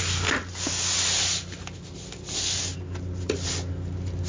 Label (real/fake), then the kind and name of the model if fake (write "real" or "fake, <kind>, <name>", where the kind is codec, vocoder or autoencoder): real